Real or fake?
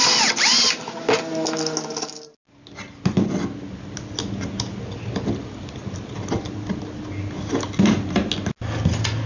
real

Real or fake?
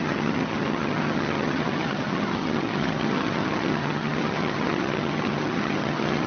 fake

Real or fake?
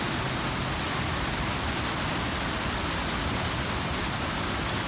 real